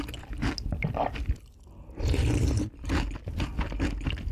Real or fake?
real